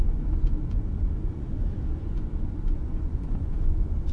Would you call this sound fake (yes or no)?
yes